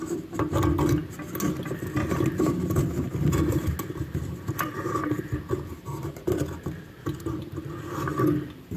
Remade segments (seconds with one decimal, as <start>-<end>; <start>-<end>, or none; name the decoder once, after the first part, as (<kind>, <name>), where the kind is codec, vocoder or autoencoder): none